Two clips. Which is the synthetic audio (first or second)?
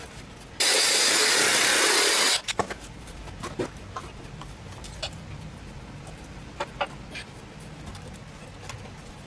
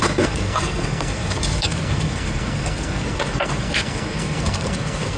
second